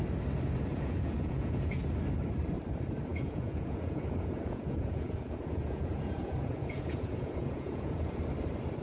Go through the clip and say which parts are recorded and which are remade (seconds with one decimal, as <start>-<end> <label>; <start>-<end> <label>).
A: 0.0-0.7 recorded; 0.7-1.8 remade; 1.8-3.1 recorded; 3.1-8.2 remade; 8.2-8.8 recorded